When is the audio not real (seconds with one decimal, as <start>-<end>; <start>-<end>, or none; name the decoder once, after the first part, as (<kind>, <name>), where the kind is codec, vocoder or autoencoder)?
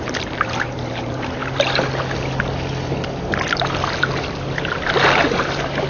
0.0-1.4 (vocoder, BigVGAN v2); 4.9-5.9